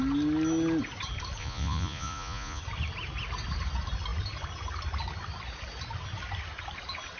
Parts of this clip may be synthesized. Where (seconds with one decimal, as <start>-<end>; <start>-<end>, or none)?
1.4-2.6